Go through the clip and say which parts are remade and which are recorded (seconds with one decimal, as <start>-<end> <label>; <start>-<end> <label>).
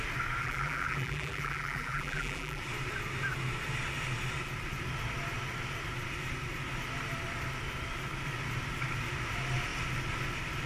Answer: 0.0-0.4 recorded; 0.4-2.6 remade; 2.6-10.7 recorded